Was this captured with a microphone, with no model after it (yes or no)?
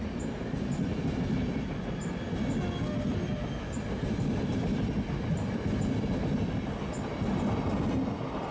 yes